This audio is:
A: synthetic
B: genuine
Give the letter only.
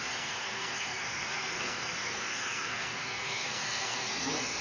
A